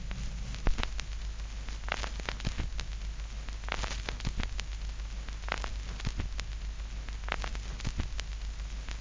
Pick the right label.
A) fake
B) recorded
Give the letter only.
B